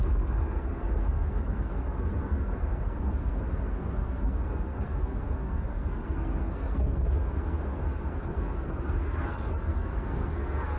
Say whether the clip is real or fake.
fake